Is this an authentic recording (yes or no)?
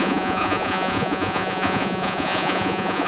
no